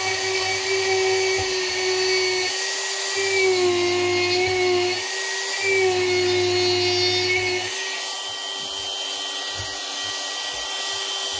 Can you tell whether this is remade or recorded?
recorded